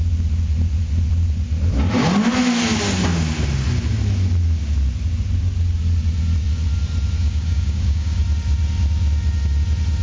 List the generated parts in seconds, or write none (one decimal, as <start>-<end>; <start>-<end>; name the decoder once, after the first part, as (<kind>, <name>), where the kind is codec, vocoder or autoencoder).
7.2-8.2 (codec, DAC)